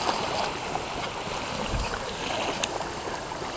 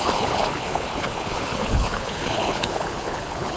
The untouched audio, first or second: first